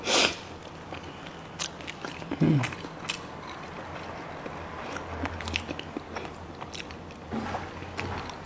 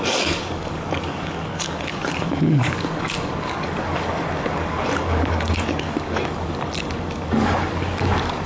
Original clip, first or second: first